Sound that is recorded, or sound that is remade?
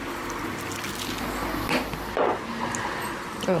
recorded